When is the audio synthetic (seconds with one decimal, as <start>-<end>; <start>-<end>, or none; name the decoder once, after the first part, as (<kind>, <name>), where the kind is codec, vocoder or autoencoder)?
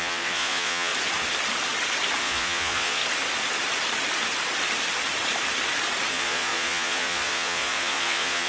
0.0-0.9 (vocoder, Vocos); 2.2-3.0; 6.1-8.5